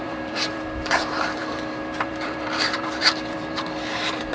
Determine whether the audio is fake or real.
fake